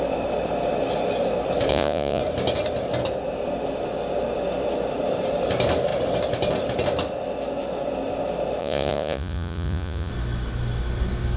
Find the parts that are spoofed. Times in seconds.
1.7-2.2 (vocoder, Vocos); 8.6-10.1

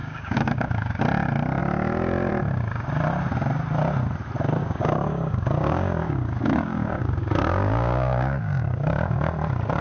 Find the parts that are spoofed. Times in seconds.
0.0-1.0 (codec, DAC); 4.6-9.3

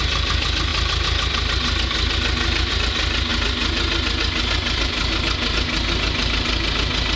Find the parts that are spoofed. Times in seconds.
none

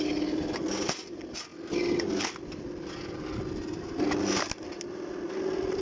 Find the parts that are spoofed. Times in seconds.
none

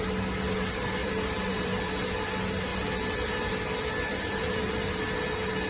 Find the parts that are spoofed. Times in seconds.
1.0-1.7 (vocoder, BigVGAN v2); 4.1-5.0

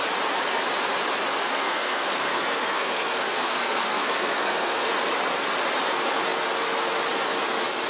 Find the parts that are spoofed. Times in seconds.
1.5-4.9 (codec, SNAC)

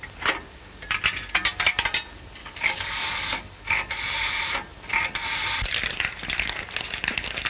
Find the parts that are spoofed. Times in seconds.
2.4-3.6 (codec, DAC)